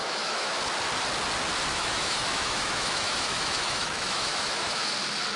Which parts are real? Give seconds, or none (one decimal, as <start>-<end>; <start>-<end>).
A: 0.6-1.7; 4.9-5.4